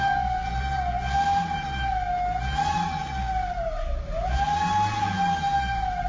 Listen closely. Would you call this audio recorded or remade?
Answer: recorded